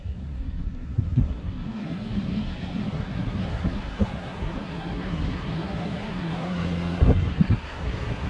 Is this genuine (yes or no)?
no